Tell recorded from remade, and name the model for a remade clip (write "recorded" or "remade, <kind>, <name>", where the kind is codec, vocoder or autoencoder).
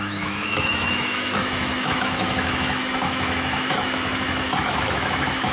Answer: remade, autoencoder, DAC-VAE